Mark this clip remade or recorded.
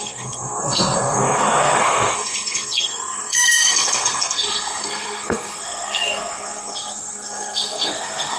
remade